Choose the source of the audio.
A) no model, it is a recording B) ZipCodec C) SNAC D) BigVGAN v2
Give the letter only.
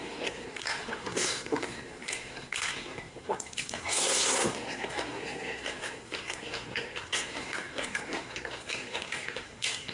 C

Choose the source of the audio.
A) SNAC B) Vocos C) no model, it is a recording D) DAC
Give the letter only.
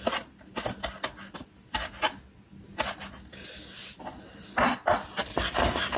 C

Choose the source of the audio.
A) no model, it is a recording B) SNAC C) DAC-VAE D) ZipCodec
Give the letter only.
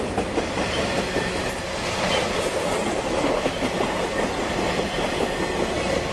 A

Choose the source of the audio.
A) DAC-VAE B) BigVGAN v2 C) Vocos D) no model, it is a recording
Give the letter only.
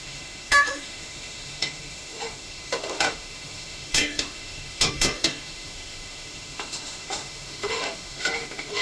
A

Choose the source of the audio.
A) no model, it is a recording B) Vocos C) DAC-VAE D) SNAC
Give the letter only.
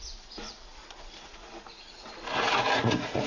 B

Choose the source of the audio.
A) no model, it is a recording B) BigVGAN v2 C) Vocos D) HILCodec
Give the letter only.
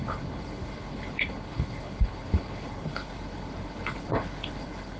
D